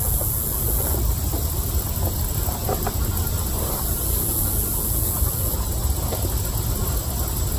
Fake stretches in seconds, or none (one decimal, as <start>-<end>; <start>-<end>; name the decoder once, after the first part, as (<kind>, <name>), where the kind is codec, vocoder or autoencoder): 1.3-3.8 (vocoder, BigVGAN v2)